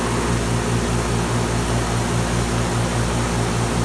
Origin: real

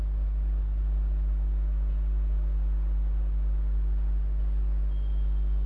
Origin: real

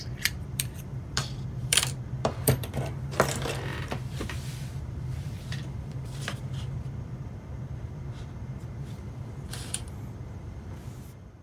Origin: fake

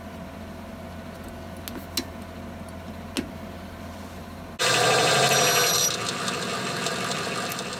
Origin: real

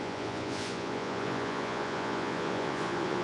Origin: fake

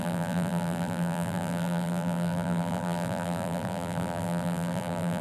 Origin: fake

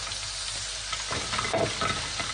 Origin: real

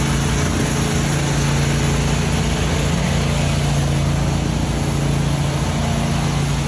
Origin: real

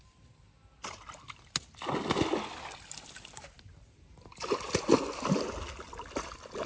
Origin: real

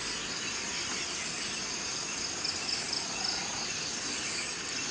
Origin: real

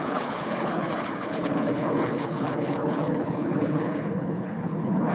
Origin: fake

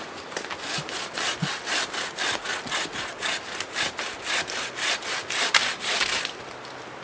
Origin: real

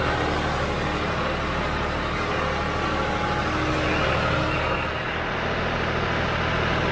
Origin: real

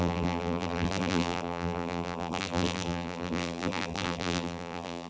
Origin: fake